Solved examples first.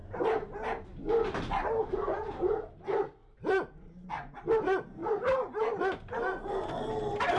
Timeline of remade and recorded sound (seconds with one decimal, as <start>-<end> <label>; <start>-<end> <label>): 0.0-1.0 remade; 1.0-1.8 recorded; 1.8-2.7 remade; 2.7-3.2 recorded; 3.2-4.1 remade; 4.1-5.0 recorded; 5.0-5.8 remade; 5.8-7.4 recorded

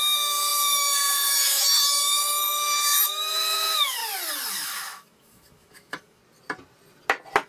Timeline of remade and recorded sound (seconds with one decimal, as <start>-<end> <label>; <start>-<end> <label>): 0.0-4.0 remade; 4.0-4.5 recorded; 4.5-6.2 remade; 6.2-7.5 recorded

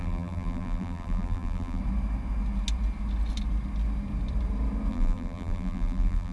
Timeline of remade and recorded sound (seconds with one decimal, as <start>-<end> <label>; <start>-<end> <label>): 0.0-1.8 remade; 1.8-4.9 recorded; 4.9-6.3 remade

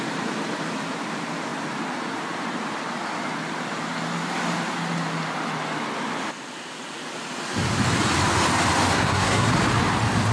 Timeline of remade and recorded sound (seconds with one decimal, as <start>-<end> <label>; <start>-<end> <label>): 0.0-8.9 recorded; 8.9-9.5 remade; 9.5-10.3 recorded

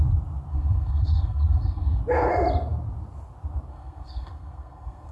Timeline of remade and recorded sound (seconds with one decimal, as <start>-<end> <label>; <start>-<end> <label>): 0.0-0.5 recorded; 0.5-2.0 remade; 2.0-3.7 recorded; 3.7-5.1 remade

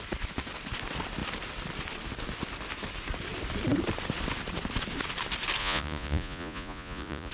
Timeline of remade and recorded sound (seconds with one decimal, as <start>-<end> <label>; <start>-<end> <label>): 0.0-5.6 recorded; 5.6-7.3 remade